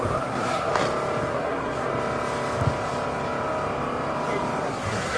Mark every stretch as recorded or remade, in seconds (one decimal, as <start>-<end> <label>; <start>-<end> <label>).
0.0-0.7 remade; 0.7-1.3 recorded; 1.3-1.9 remade; 1.9-4.6 recorded; 4.6-5.2 remade